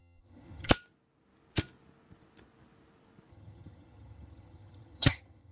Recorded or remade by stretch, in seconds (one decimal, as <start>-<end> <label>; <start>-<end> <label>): 0.0-0.7 remade; 0.7-3.3 recorded; 3.3-5.5 remade